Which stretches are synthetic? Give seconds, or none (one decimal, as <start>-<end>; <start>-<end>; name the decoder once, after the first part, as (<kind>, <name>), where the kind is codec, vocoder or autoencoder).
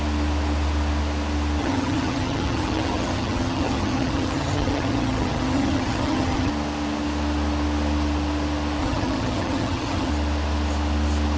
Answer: 1.6-6.5 (vocoder, HiFi-GAN); 8.8-10.1